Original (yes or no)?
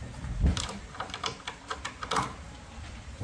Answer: yes